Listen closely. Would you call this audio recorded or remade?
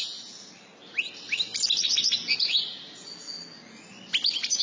recorded